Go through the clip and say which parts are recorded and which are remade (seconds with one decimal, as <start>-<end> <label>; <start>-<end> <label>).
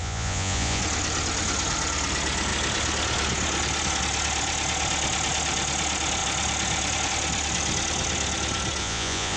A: 0.0-0.8 remade; 0.8-8.8 recorded; 8.8-9.4 remade